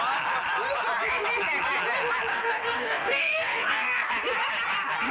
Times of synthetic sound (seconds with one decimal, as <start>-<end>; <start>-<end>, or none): 2.3-4.1